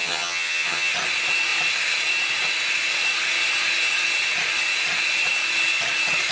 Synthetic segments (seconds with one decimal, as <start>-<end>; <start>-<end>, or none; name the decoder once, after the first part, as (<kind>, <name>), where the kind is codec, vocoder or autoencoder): 0.0-0.9 (vocoder, HiFi-GAN)